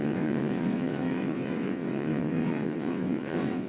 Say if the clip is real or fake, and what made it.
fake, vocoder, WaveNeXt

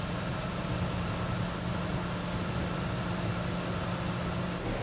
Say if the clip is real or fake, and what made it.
real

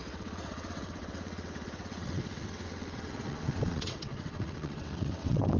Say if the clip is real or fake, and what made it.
fake, vocoder, WaveNeXt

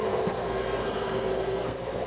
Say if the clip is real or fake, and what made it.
fake, codec, SNAC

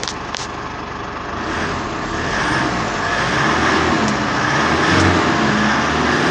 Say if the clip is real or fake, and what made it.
real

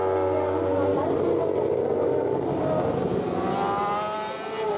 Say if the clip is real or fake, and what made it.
real